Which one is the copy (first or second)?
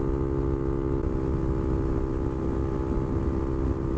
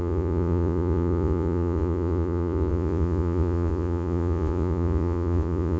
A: second